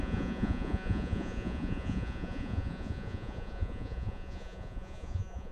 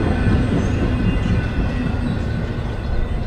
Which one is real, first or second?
second